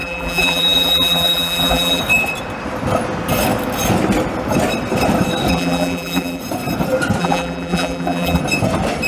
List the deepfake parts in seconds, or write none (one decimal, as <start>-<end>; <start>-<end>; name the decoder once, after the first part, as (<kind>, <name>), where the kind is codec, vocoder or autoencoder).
0.0-2.0 (vocoder, BigVGAN v2); 5.5-6.4; 7.2-8.4